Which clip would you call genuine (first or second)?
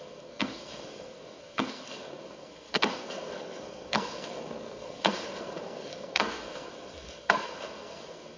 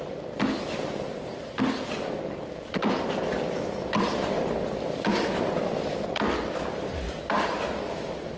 second